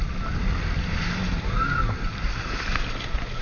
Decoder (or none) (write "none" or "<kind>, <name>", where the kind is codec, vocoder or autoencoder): none